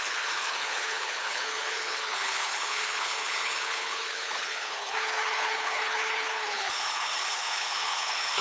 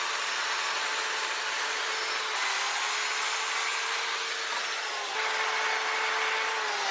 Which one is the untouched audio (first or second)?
second